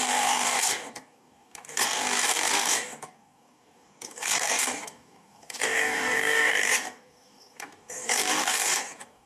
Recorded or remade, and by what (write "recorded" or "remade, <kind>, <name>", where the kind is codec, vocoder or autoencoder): remade, codec, DAC